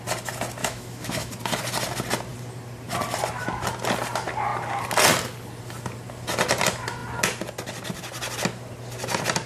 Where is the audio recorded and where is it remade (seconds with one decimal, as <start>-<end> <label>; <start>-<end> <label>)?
0.0-0.6 recorded; 0.6-1.3 remade; 1.3-9.5 recorded